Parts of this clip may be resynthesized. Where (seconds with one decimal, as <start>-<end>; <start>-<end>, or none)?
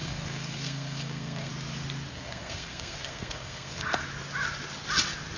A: 0.0-1.5; 2.1-4.0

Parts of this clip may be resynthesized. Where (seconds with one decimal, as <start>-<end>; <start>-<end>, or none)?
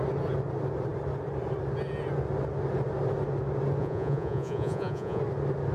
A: 3.8-5.2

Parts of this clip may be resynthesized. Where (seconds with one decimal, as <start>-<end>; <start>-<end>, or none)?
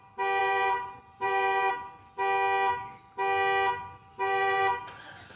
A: 0.4-1.7; 4.0-4.8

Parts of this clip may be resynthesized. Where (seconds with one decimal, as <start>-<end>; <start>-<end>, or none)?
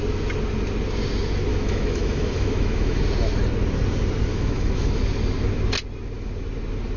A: 1.5-3.0; 4.3-5.0